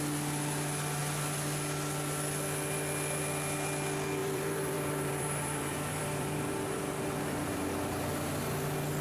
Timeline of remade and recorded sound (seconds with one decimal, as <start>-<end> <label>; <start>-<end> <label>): 0.0-4.2 recorded; 4.2-6.5 remade; 6.5-9.0 recorded